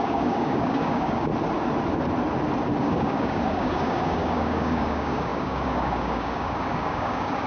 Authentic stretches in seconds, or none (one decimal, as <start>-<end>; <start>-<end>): 1.3-2.8